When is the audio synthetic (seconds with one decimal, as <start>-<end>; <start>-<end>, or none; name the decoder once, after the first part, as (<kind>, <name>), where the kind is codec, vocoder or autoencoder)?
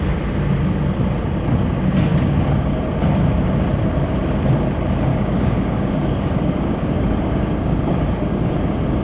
5.1-8.6 (codec, DAC)